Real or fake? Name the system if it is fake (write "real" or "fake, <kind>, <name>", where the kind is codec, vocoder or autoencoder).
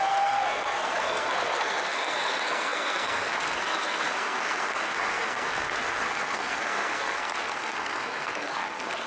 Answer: fake, codec, SNAC